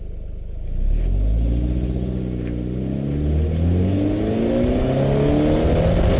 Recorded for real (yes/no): yes